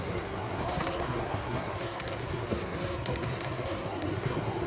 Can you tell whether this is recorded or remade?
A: remade